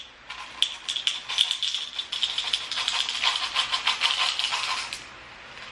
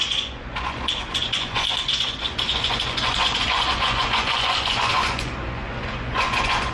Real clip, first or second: first